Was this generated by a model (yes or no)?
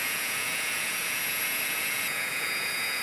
yes